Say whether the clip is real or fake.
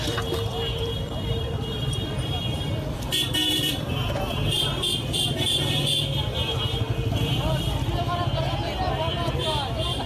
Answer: fake